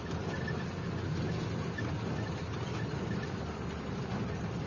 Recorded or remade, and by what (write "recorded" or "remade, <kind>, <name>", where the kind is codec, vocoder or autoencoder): recorded